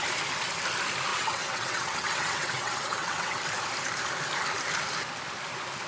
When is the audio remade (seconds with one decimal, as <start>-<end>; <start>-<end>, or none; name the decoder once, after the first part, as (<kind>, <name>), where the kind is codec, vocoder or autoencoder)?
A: 1.1-3.4 (vocoder, WaveNeXt)